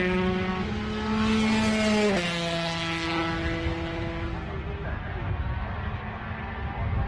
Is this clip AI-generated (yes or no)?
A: no